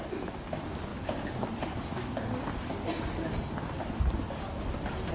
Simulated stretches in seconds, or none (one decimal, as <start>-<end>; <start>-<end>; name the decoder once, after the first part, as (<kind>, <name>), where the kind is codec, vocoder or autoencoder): none